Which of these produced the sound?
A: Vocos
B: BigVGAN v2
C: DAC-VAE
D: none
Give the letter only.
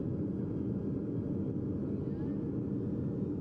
D